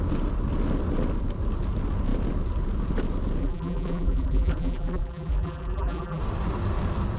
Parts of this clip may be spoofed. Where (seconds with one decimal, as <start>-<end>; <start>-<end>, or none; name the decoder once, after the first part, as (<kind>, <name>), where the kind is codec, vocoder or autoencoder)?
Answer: 3.4-6.2 (vocoder, BigVGAN v2)